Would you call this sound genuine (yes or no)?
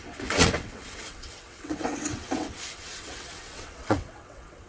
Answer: no